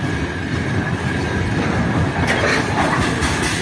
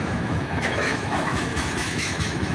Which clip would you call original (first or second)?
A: first